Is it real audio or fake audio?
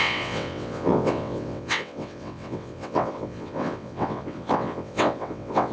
fake